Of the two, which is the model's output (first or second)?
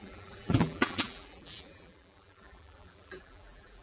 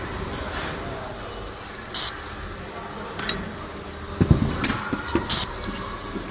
first